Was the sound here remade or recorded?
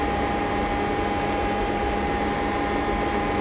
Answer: recorded